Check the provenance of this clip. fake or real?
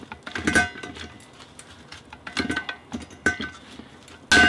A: real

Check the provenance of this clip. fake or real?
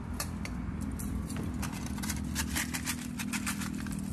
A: fake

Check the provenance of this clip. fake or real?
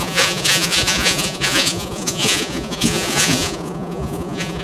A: fake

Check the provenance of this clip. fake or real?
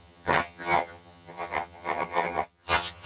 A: fake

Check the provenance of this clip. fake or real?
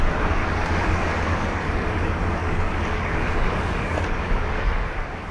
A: fake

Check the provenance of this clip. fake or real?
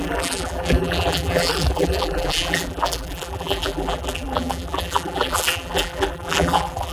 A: fake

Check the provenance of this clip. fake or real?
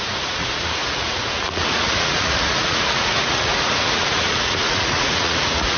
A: fake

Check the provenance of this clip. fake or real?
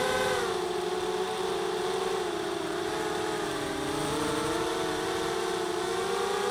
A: fake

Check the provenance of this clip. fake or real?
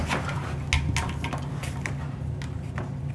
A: real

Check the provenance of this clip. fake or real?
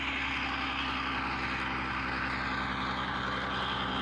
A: real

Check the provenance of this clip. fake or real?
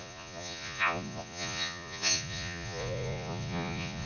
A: fake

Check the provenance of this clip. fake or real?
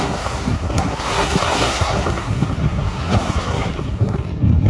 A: fake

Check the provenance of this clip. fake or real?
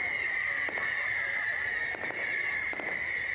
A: real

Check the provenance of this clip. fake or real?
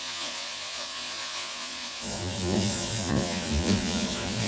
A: fake